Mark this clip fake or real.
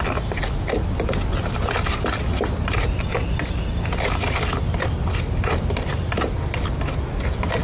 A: real